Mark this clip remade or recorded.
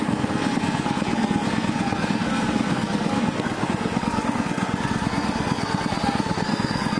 remade